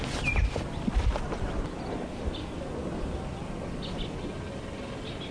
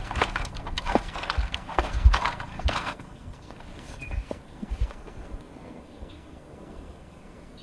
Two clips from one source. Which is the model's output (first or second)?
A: second